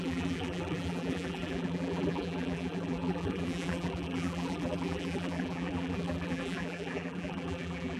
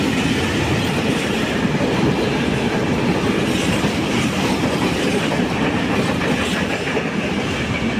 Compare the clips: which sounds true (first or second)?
second